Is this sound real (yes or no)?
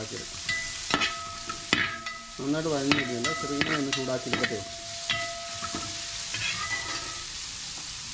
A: yes